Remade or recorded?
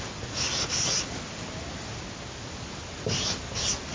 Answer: recorded